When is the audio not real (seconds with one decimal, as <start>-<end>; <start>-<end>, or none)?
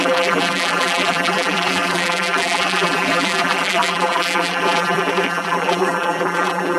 0.0-6.8